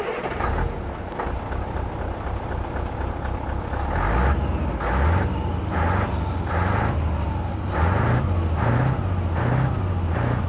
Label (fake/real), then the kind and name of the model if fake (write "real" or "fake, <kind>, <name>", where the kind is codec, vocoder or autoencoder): real